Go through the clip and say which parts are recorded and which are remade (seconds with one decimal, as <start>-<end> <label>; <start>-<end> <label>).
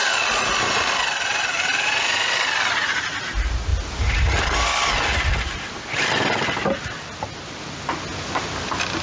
0.0-9.0 recorded